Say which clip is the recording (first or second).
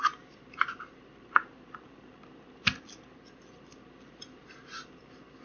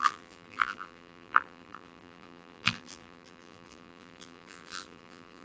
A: first